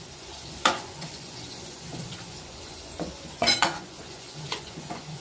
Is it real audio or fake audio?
fake